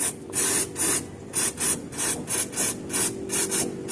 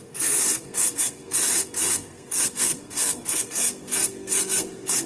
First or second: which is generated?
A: second